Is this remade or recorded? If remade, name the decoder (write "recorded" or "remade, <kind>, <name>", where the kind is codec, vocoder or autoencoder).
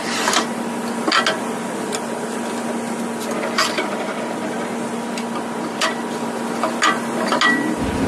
recorded